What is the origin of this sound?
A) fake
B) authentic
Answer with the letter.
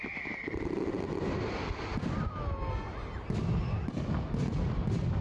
B